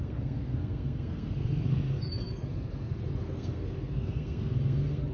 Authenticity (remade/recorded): remade